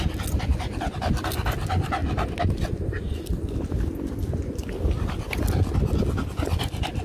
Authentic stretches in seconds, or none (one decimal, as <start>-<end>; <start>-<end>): 0.0-7.0